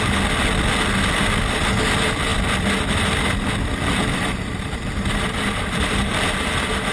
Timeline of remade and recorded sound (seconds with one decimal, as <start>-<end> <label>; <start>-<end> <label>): 0.0-4.0 recorded; 4.0-6.2 remade; 6.2-6.9 recorded